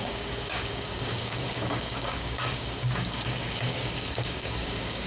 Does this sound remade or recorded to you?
remade